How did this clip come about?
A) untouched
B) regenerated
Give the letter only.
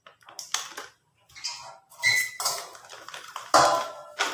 A